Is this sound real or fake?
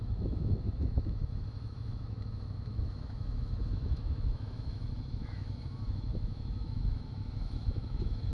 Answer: fake